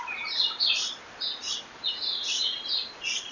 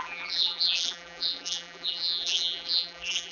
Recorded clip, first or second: first